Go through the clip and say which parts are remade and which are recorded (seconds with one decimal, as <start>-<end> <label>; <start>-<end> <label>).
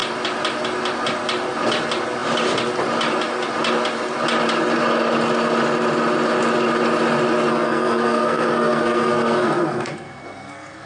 0.0-7.5 recorded; 7.5-10.9 remade